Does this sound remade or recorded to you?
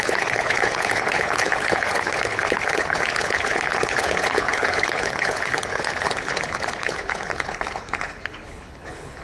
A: remade